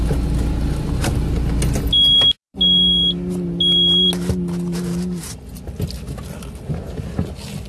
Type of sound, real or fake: real